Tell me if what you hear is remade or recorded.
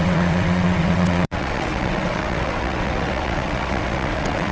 remade